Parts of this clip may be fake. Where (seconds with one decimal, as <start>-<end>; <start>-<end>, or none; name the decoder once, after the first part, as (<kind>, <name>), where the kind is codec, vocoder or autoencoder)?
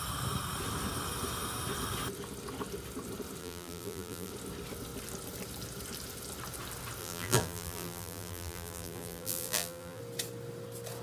3.4-4.3 (vocoder, BigVGAN v2); 7.0-10.0